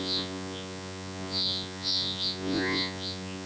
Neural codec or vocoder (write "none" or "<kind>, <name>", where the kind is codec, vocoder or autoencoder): vocoder, Vocos